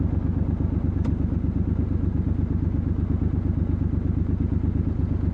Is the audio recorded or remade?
recorded